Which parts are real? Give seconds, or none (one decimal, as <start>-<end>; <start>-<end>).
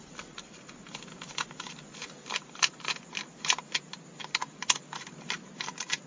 0.0-6.1